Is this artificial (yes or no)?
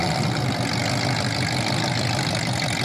no